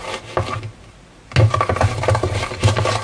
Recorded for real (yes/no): yes